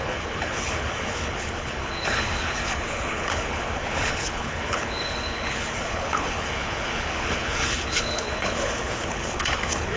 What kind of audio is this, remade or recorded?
remade